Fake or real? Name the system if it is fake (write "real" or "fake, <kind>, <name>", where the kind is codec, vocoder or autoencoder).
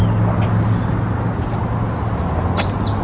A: real